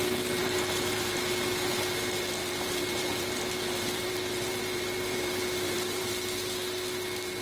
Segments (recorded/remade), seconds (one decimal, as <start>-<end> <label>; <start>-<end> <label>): 0.0-0.4 recorded; 0.4-1.2 remade; 1.2-2.4 recorded; 2.4-6.1 remade; 6.1-7.4 recorded